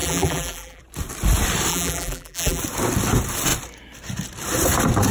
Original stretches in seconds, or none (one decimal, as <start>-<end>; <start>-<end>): 0.8-1.7; 2.6-5.1